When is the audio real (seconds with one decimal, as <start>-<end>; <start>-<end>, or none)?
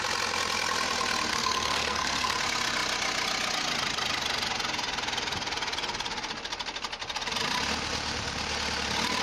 0.0-1.3; 2.4-9.2